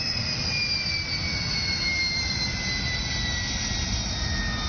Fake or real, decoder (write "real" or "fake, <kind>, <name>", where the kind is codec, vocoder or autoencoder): real